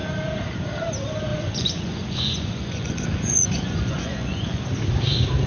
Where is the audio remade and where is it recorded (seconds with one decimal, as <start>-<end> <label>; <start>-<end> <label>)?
0.0-1.3 recorded; 1.3-4.6 remade; 4.6-5.5 recorded